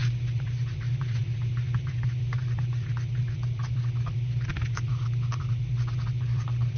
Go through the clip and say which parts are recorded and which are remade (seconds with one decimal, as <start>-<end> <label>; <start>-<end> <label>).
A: 0.0-6.8 recorded

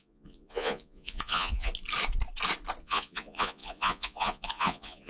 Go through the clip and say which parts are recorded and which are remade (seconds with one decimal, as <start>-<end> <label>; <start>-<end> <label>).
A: 0.0-1.7 remade; 1.7-2.8 recorded; 2.8-5.1 remade

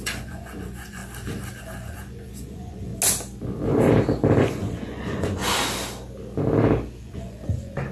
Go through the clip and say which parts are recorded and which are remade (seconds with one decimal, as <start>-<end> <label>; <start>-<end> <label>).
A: 0.0-1.0 remade; 1.0-1.6 recorded; 1.6-2.9 remade; 2.9-4.4 recorded; 4.4-5.4 remade; 5.4-7.0 recorded; 7.0-7.9 remade

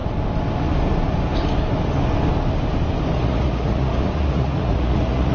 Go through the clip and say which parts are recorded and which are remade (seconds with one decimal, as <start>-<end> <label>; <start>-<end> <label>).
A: 0.0-3.2 recorded; 3.2-5.3 remade

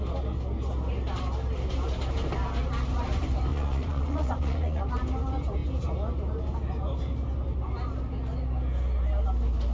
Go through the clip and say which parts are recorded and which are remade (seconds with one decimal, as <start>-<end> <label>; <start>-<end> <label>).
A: 0.0-3.5 recorded; 3.5-4.8 remade; 4.8-9.7 recorded